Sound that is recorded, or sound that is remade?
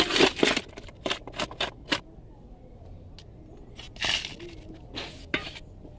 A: recorded